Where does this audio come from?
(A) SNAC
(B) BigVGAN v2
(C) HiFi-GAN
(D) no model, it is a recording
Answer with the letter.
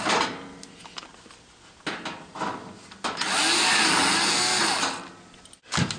D